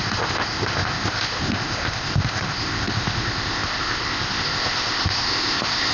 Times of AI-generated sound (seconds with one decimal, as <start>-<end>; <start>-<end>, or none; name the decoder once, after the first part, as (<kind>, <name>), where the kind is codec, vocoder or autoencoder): 0.0-5.9 (codec, ZipCodec)